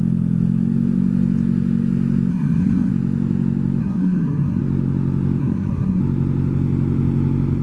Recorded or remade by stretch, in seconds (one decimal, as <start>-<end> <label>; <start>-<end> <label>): 0.0-2.3 recorded; 2.3-2.9 remade; 2.9-3.8 recorded; 3.8-4.6 remade; 4.6-5.4 recorded; 5.4-6.0 remade; 6.0-7.6 recorded